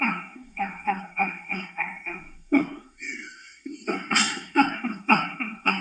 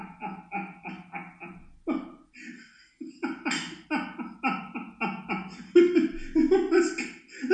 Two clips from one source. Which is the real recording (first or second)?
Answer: second